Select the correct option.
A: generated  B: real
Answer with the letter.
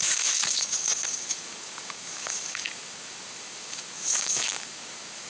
A